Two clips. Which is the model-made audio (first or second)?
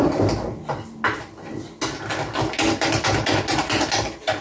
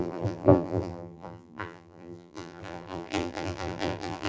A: second